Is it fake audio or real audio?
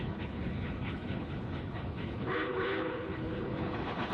fake